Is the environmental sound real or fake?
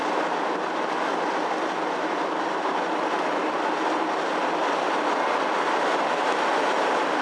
real